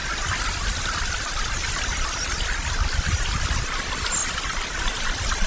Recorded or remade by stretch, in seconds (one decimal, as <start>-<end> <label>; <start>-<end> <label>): 0.0-5.5 recorded